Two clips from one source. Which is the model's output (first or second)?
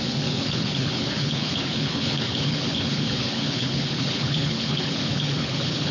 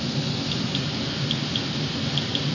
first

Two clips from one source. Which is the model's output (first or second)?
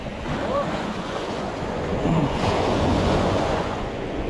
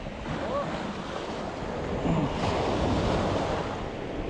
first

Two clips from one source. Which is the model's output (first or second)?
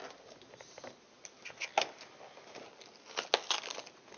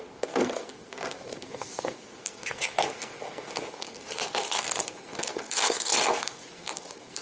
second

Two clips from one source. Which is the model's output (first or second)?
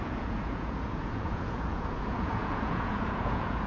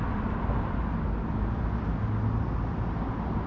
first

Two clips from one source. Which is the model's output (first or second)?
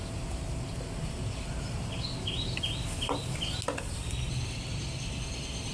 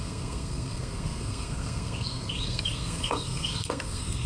second